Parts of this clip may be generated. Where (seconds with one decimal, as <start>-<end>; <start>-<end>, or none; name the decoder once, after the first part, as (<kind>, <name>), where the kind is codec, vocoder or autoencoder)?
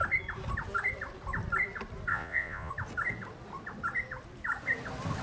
2.1-2.7 (vocoder, Vocos)